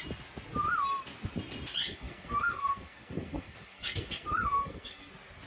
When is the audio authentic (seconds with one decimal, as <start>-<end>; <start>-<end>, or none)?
0.0-1.8; 5.1-5.5